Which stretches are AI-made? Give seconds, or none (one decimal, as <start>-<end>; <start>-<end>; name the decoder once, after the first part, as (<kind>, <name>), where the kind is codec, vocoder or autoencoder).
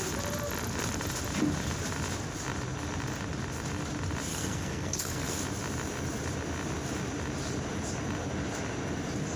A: 4.3-5.4 (codec, SNAC)